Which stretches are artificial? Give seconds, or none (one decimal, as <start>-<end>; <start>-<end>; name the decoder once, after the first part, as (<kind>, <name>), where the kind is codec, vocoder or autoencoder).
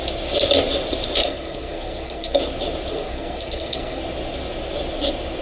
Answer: 1.2-2.4 (codec, SNAC); 2.9-4.0